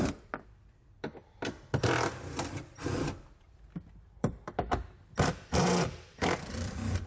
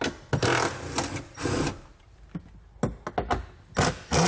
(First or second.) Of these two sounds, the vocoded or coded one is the first